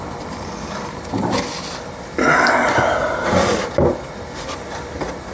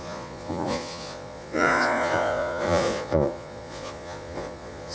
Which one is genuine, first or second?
first